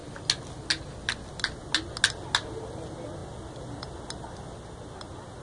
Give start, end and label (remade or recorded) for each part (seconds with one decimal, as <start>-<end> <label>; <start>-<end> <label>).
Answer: 0.0-5.4 recorded